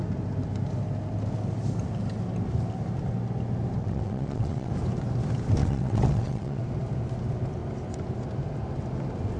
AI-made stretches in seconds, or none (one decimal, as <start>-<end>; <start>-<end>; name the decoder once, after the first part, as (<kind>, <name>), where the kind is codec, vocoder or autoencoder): 3.8-4.7 (vocoder, WaveNeXt); 5.6-6.6